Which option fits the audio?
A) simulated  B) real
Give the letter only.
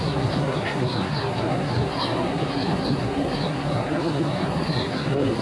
A